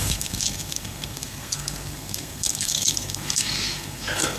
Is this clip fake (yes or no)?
yes